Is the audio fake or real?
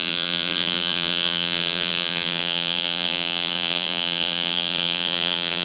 fake